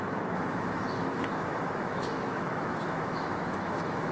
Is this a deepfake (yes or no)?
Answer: yes